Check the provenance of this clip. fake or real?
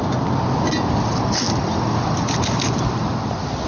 real